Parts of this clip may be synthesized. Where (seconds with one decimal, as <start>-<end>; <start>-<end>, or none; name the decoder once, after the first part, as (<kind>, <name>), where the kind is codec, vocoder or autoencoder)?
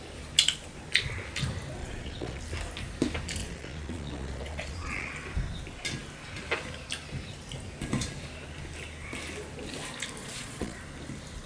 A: 1.8-2.4 (vocoder, Vocos); 3.4-5.1; 10.2-10.8